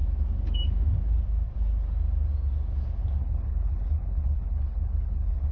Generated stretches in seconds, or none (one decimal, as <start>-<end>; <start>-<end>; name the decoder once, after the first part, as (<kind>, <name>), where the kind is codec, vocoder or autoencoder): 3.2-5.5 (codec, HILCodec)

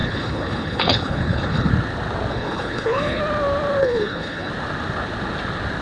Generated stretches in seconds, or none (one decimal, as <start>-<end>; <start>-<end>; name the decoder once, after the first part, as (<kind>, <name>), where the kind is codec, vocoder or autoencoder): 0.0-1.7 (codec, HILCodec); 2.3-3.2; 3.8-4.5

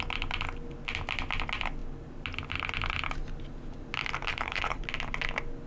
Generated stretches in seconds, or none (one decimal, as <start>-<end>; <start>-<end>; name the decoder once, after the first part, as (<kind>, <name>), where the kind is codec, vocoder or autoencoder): 4.3-4.8 (codec, HILCodec)